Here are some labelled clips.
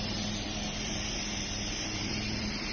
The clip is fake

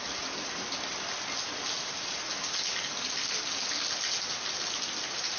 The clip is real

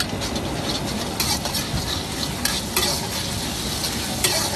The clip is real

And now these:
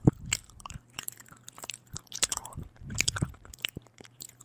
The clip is fake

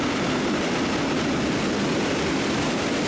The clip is real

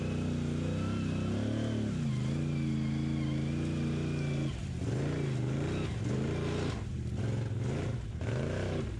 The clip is real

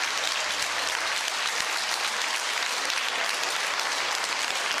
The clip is real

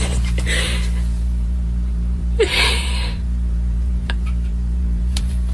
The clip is fake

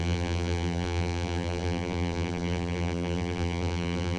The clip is fake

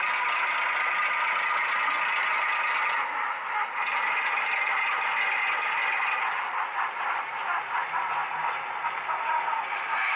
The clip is real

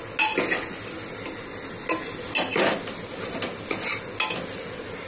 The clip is real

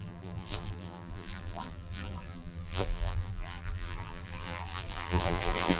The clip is fake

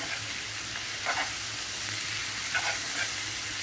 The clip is real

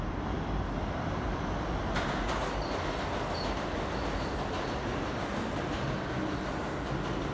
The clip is real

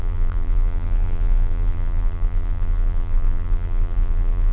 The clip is fake